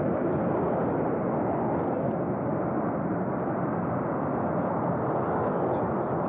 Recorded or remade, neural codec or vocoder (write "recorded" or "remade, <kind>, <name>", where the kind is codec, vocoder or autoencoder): recorded